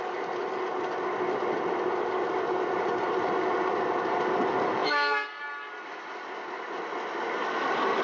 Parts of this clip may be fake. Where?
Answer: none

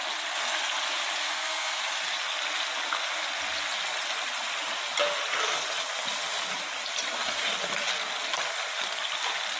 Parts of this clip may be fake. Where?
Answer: 1.2-1.8 (codec, SNAC)